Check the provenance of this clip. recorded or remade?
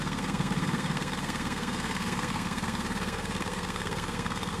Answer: remade